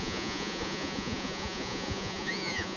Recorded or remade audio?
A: remade